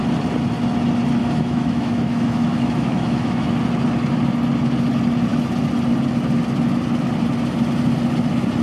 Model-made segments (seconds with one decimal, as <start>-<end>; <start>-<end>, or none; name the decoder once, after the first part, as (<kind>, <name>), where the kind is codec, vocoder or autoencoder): 1.2-3.5 (autoencoder, DAC-VAE)